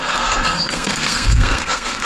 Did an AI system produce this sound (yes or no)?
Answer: yes